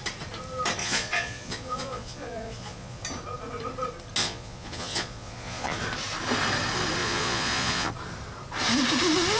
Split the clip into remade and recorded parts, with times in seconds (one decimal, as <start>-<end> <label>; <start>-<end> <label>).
0.0-0.8 recorded; 0.8-3.0 remade; 3.0-4.2 recorded; 4.2-5.8 remade; 5.8-7.0 recorded; 7.0-7.9 remade; 7.9-9.4 recorded

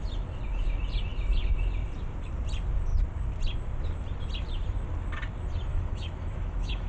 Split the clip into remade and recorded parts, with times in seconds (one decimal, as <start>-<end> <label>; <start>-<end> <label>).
0.0-5.7 recorded; 5.7-6.9 remade

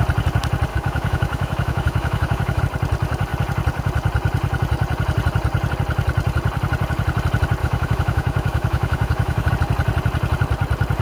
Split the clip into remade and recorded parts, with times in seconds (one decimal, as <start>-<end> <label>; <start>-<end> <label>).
0.0-0.7 recorded; 0.7-2.6 remade; 2.6-7.6 recorded; 7.6-9.5 remade; 9.5-11.0 recorded